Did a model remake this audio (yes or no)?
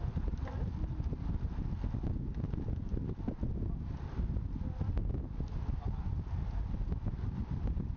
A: no